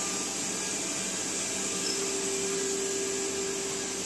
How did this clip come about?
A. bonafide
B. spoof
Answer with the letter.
A